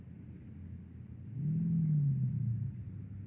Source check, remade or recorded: recorded